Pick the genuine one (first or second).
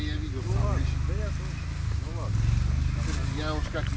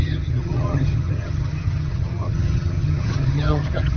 first